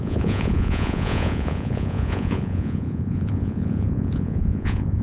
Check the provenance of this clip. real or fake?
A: fake